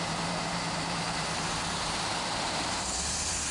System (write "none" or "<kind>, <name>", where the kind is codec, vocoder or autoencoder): vocoder, BigVGAN v2